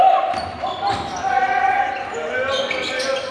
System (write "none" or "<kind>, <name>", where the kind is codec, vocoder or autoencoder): none